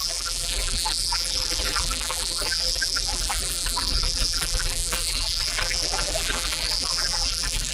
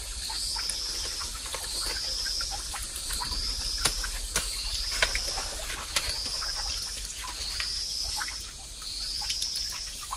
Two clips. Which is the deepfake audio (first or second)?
first